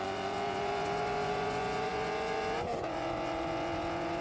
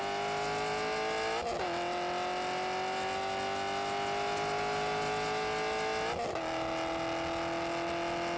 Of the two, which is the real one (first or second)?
second